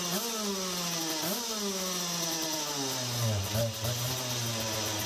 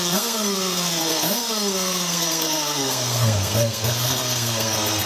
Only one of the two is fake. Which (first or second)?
second